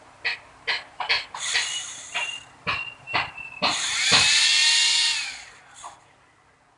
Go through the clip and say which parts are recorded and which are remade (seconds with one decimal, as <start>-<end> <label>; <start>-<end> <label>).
0.0-4.6 remade; 4.6-6.0 recorded; 6.0-6.8 remade